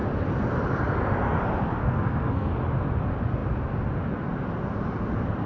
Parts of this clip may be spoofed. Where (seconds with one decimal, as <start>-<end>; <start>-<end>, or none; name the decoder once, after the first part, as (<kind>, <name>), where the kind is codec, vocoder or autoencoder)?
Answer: 1.8-2.5 (codec, SNAC)